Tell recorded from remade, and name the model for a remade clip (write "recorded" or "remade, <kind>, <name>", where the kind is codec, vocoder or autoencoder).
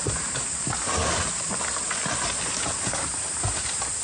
recorded